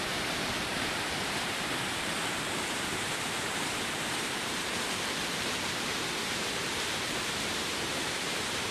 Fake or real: fake